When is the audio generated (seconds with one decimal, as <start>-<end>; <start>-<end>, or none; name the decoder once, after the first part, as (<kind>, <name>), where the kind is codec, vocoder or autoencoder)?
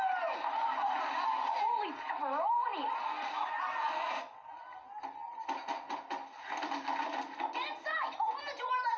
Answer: none